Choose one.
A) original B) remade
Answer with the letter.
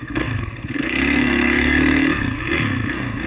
B